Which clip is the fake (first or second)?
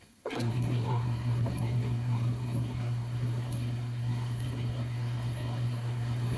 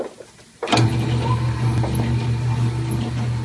first